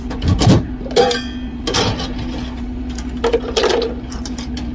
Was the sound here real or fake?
real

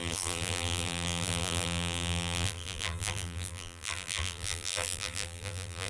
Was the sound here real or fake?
fake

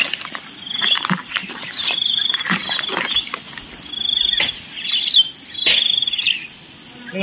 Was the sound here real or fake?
real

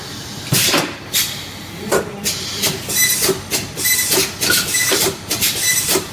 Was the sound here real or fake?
fake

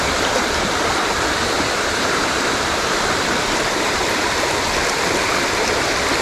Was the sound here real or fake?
fake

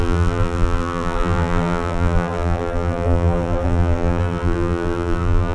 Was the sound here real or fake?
fake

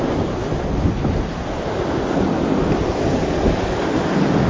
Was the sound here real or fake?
real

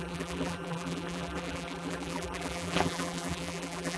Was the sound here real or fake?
fake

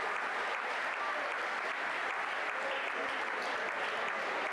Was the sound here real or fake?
real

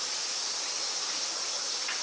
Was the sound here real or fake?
real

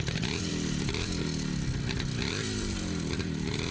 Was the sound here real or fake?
fake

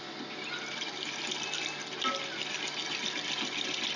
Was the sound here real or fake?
real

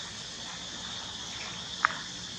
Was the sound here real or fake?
real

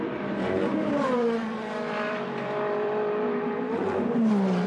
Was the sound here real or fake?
fake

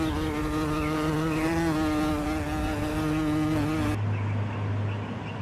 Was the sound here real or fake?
real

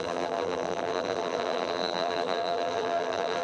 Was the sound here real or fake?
fake